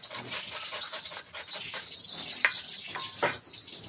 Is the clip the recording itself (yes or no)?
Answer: yes